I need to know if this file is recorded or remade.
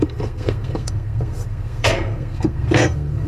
remade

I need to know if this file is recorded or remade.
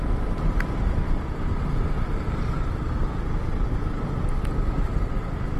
recorded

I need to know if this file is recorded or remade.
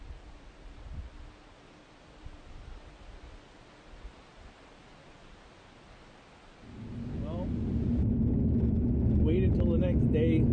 recorded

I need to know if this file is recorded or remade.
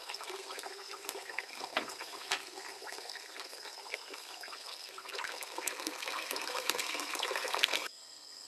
remade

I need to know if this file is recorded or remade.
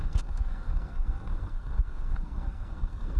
remade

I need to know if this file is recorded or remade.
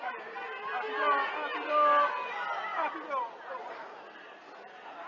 recorded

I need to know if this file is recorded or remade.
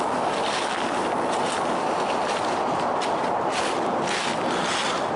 recorded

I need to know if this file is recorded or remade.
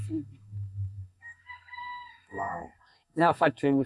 remade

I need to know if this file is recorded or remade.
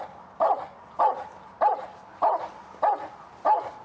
recorded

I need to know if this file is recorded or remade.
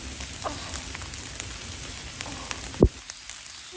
recorded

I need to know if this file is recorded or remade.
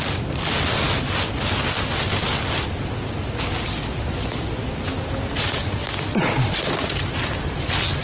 recorded